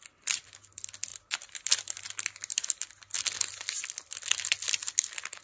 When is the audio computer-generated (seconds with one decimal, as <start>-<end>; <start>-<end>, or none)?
none